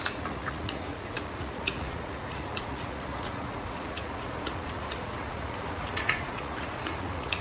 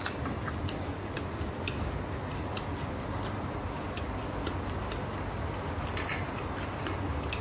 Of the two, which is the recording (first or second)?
second